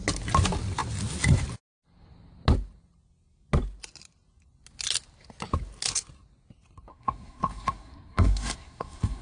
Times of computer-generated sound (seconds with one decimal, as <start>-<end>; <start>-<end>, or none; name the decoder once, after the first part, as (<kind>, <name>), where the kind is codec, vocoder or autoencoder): 6.9-9.2 (codec, SNAC)